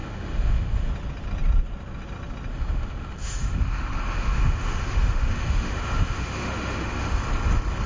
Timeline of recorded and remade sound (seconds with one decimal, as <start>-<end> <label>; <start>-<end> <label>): 0.0-0.9 remade; 0.9-2.5 recorded; 2.5-7.2 remade; 7.2-7.9 recorded